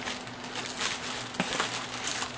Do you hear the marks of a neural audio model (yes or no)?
no